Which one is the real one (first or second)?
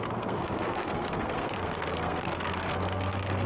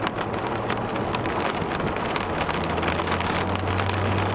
second